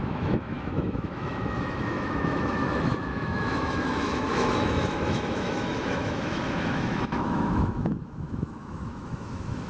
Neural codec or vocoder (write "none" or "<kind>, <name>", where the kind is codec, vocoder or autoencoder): autoencoder, DAC-VAE